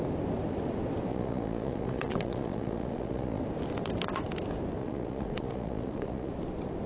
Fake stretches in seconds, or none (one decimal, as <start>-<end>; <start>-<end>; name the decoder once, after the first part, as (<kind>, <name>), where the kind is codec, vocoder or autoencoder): 1.1-3.4 (vocoder, Vocos); 4.8-6.3